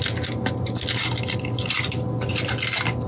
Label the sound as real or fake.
real